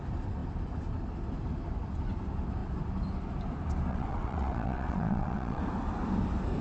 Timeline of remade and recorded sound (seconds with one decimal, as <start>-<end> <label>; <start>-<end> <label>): 0.0-3.9 recorded; 3.9-5.6 remade; 5.6-6.6 recorded